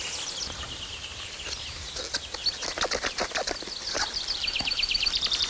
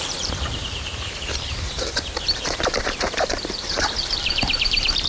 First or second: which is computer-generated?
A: second